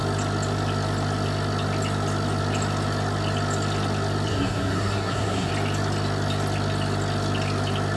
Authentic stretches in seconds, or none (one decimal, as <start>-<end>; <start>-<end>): 0.0-4.3; 5.5-8.0